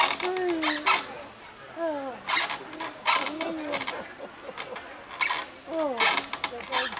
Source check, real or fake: real